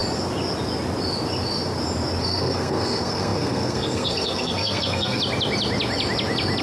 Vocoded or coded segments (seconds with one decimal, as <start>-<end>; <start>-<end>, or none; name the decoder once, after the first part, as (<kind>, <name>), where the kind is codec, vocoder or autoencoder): 2.2-5.2 (codec, SNAC)